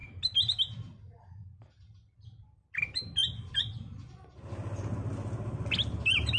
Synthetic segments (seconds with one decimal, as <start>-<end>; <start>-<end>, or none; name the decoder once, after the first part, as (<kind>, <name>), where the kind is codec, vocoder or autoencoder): none